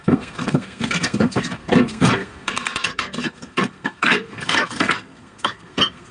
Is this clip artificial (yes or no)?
yes